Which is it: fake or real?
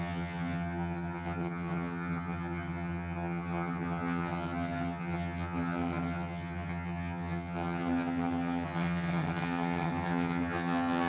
fake